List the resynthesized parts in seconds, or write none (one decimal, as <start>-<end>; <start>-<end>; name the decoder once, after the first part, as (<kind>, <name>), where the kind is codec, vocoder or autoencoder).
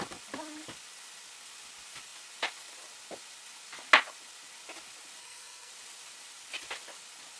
5.2-5.7 (codec, SNAC)